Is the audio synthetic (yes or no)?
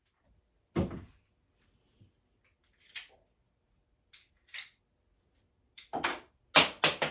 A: no